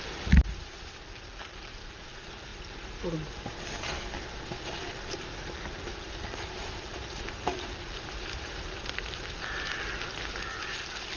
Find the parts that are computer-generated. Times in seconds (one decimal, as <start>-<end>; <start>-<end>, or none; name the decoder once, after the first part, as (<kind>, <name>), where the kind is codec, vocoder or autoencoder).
1.1-2.0 (vocoder, BigVGAN v2); 2.5-3.3; 5.3-9.4